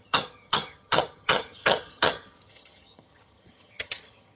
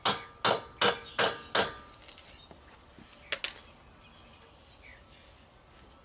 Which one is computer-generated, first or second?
first